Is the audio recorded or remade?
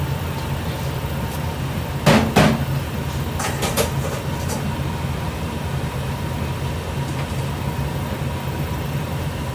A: recorded